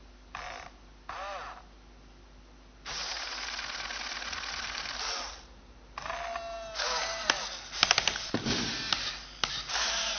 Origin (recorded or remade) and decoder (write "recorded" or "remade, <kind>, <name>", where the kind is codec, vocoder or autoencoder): recorded